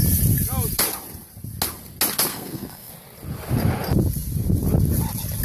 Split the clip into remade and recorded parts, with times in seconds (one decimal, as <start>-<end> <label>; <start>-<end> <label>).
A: 0.0-2.3 recorded; 2.3-2.9 remade; 2.9-5.4 recorded